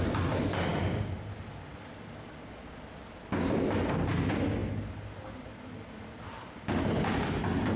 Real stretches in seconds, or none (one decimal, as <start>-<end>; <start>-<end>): 0.0-7.8